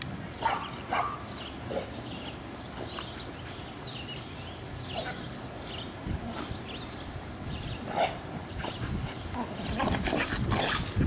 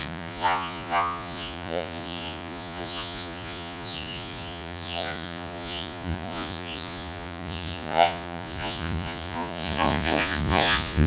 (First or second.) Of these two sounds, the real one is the first